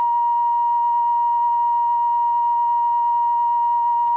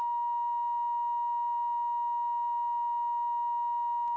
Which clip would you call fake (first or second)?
first